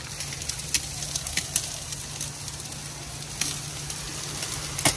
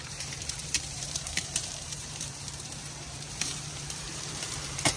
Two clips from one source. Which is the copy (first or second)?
second